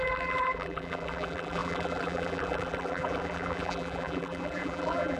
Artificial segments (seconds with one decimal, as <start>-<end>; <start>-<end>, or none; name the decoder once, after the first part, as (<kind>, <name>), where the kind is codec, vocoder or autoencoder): 0.0-5.2 (vocoder, BigVGAN v2)